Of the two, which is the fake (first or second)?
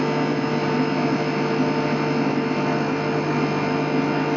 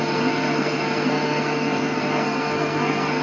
second